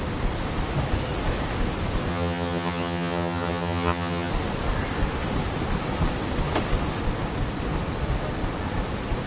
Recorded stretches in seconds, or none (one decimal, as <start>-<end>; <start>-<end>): 0.0-2.1; 4.3-9.3